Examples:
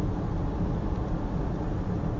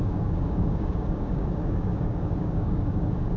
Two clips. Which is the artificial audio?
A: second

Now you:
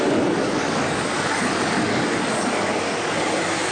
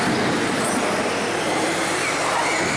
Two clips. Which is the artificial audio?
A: first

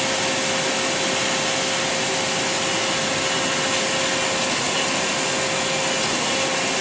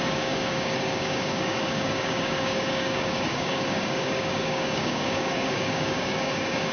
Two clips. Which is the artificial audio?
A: second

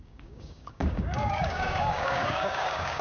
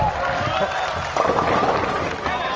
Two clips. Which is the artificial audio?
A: first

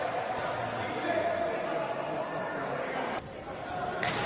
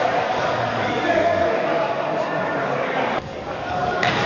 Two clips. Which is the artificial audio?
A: second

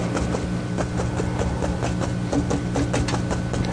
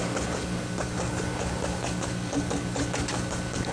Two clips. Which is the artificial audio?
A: second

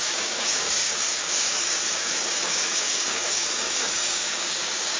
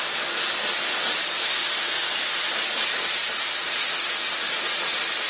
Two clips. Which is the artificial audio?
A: first